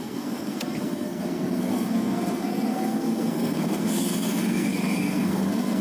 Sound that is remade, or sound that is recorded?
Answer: remade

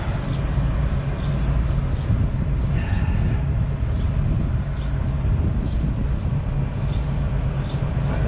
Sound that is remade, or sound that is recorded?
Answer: recorded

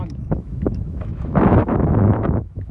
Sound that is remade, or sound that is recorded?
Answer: remade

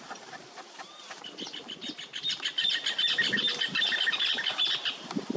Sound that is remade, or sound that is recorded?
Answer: recorded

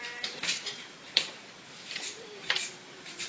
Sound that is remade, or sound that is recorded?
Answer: remade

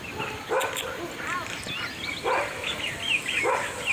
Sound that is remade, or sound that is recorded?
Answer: remade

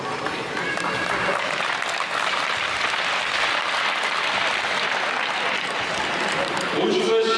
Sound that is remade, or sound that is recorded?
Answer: recorded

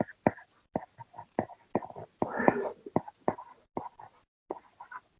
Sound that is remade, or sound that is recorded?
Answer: recorded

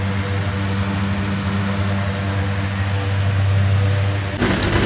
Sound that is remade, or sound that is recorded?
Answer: recorded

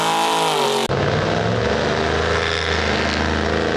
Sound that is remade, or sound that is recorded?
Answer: recorded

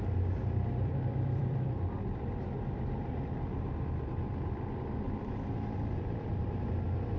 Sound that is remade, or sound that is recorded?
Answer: remade